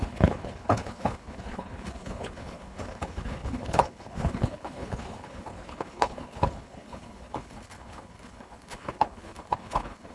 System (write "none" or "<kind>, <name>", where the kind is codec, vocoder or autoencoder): codec, HILCodec